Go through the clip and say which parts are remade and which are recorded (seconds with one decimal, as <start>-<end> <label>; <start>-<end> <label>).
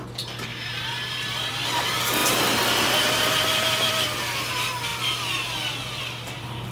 0.0-0.5 recorded; 0.5-1.5 remade; 1.5-6.7 recorded